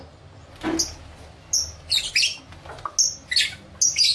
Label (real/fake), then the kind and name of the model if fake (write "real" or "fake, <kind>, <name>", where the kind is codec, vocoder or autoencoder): real